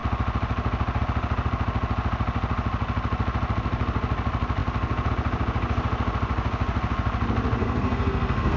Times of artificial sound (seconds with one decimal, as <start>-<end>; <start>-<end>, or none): 7.6-8.6